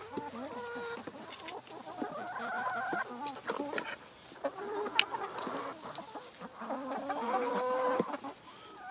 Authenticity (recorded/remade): recorded